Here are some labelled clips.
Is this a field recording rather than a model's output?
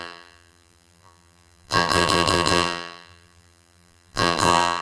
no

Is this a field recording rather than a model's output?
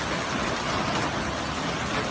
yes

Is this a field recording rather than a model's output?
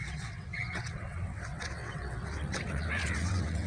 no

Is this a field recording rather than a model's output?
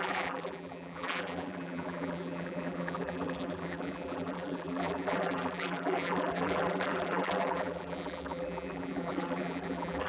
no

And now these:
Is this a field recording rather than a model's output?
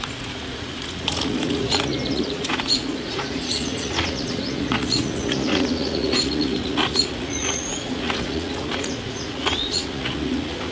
no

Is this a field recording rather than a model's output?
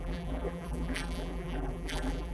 no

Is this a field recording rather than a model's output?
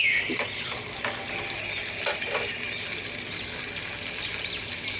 yes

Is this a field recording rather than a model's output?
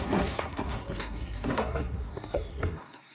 no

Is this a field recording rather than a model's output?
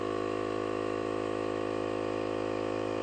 no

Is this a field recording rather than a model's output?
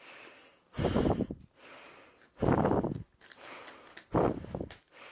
yes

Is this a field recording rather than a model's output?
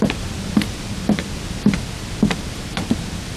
no